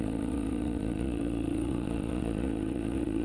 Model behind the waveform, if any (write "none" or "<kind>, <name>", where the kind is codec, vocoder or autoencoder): vocoder, Vocos